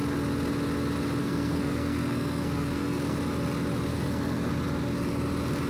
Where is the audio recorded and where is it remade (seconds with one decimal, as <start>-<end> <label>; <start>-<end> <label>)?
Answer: 0.0-1.2 recorded; 1.2-3.2 remade; 3.2-3.9 recorded; 3.9-4.5 remade; 4.5-5.7 recorded